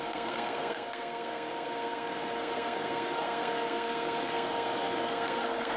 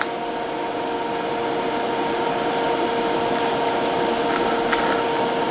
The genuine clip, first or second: second